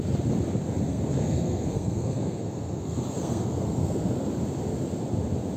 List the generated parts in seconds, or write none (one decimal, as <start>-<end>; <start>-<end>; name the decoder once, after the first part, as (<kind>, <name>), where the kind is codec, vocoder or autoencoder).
0.9-4.3 (codec, SNAC)